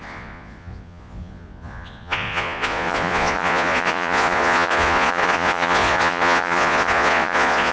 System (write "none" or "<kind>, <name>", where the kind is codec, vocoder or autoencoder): vocoder, Vocos